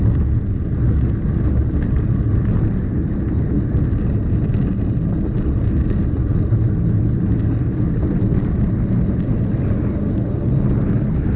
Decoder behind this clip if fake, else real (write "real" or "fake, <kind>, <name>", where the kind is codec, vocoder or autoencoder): real